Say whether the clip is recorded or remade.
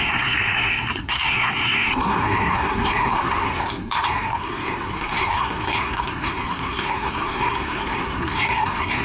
remade